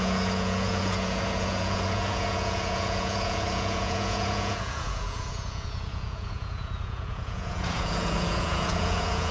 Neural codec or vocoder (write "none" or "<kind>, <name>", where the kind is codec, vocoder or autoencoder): vocoder, Vocos